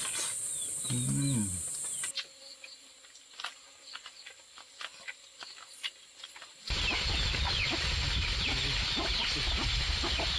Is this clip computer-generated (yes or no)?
yes